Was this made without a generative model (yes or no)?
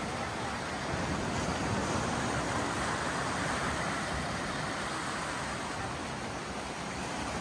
yes